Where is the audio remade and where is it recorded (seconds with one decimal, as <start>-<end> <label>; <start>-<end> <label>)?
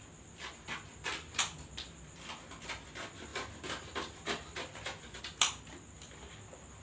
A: 0.0-6.8 recorded